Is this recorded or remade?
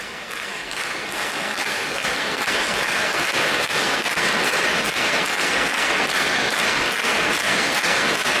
remade